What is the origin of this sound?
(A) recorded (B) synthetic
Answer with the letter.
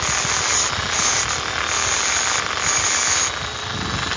A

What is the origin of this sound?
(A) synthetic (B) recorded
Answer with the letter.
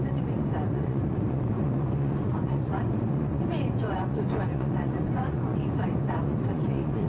A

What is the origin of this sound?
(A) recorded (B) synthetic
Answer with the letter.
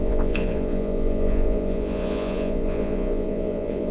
B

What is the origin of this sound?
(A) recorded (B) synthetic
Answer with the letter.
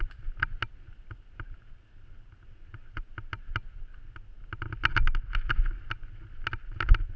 A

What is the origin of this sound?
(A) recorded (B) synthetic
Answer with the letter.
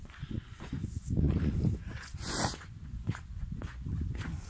B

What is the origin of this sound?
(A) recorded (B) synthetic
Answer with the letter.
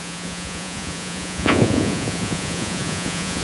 B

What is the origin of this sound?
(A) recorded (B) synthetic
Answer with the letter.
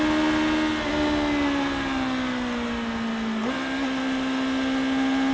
A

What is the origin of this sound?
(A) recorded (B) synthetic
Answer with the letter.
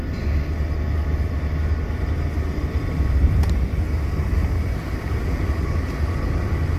A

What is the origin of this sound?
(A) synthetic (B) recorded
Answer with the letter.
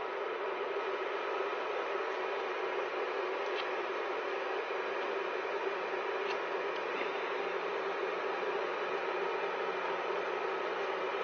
B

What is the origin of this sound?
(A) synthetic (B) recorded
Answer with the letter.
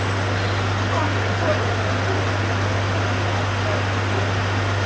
B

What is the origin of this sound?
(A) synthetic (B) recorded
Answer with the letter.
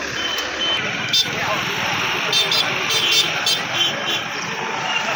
B